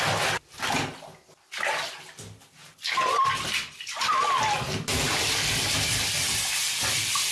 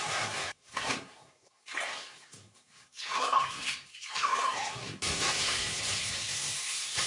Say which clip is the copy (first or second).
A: second